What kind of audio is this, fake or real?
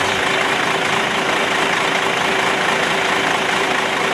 real